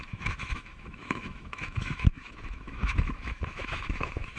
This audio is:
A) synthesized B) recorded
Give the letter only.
A